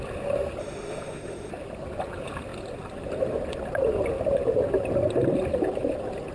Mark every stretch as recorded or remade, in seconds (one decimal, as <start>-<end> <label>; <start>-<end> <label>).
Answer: 0.0-0.6 recorded; 0.6-1.5 remade; 1.5-6.3 recorded